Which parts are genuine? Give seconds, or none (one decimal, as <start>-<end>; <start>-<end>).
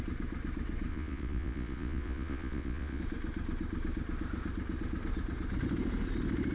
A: 0.0-0.9; 3.0-6.5